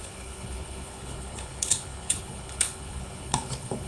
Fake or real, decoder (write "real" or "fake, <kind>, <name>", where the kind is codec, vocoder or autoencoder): fake, codec, HILCodec